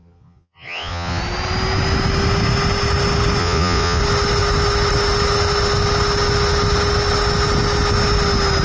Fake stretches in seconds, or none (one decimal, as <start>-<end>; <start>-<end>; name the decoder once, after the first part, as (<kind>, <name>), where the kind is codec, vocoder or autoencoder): 0.0-1.2 (vocoder, Vocos); 3.4-4.0